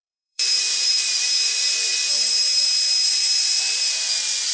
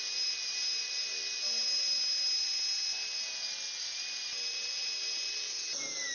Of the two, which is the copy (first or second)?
first